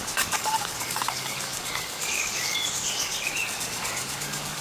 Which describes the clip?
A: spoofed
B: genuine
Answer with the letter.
A